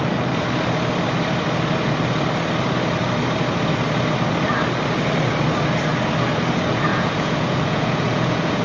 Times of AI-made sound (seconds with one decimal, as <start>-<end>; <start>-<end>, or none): 6.9-8.6